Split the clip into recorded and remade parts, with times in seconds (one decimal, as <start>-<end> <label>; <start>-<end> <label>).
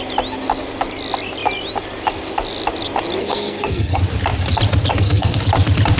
0.0-3.2 recorded; 3.2-4.0 remade; 4.0-4.9 recorded; 4.9-5.4 remade; 5.4-6.0 recorded